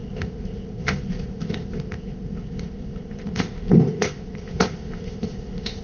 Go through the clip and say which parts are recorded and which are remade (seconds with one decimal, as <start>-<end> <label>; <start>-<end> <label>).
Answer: 0.0-5.8 remade